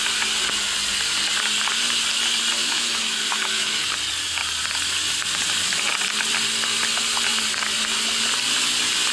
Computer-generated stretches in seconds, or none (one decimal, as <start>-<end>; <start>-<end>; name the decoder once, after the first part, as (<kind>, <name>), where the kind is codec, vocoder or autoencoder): 2.6-3.9 (autoencoder, DAC-VAE)